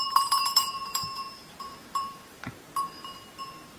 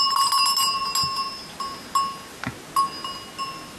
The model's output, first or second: first